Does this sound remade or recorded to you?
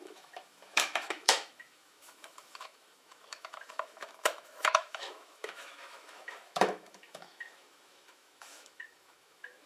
remade